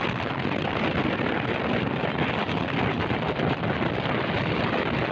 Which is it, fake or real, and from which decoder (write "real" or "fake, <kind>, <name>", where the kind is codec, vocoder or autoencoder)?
fake, vocoder, BigVGAN v2